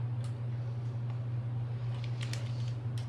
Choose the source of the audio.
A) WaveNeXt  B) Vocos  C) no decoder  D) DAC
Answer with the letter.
C